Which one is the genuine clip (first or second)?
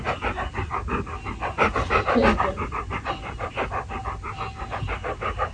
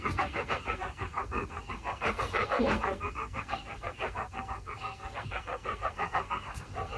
first